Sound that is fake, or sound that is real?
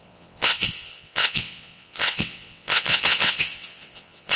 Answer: fake